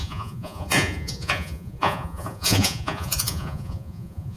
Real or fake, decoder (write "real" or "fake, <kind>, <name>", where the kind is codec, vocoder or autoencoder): fake, vocoder, Vocos